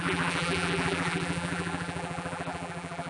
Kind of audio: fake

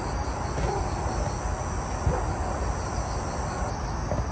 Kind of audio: real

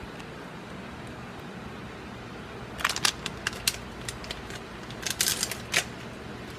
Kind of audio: real